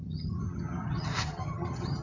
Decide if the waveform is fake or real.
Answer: fake